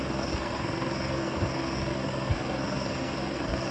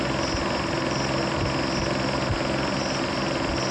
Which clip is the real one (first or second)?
second